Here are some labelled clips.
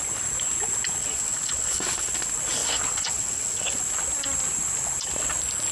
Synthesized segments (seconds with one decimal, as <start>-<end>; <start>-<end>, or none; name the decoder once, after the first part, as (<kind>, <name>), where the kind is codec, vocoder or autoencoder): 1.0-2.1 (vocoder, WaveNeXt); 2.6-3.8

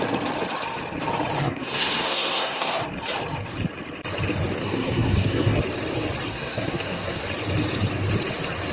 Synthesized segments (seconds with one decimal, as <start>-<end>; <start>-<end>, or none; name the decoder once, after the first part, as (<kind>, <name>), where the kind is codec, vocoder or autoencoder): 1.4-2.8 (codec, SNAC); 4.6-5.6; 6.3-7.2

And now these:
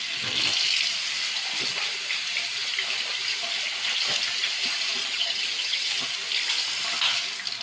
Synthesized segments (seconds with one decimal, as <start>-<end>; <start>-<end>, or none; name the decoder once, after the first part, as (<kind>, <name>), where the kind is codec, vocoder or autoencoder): 5.0-5.9 (vocoder, HiFi-GAN)